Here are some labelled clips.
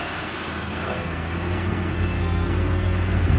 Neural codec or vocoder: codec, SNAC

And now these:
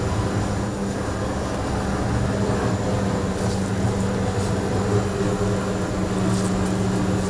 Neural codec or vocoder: none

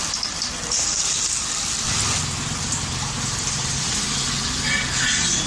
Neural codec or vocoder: none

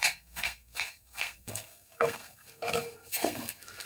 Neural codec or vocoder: codec, SNAC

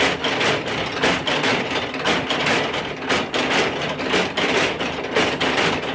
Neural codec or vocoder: none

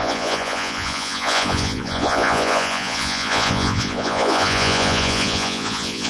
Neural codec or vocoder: vocoder, Vocos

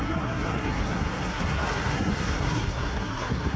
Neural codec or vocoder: codec, SNAC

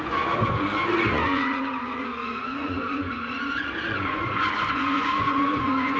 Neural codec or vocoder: vocoder, Vocos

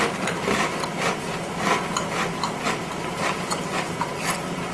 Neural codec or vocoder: none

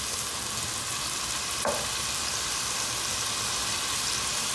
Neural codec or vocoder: none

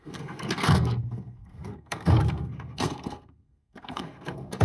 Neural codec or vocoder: codec, SNAC